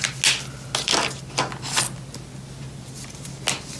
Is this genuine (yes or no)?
yes